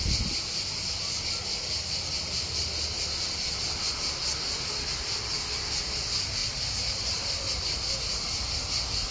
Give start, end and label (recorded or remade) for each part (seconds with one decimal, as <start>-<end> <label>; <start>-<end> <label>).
0.0-6.4 recorded; 6.4-7.5 remade; 7.5-9.1 recorded